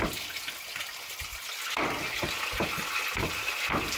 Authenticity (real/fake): real